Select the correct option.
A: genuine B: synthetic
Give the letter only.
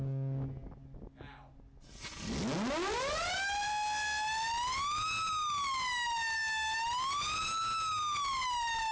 A